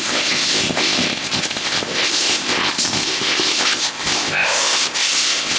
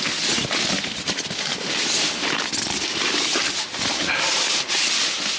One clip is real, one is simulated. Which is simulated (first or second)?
first